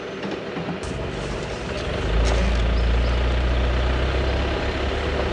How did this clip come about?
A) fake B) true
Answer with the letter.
B